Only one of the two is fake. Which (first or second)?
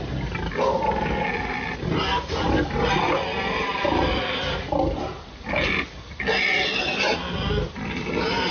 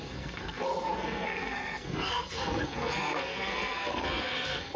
second